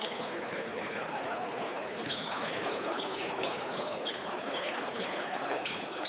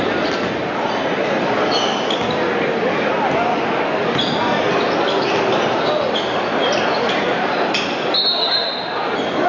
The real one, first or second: second